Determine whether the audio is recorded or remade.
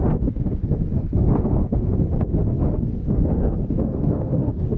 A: remade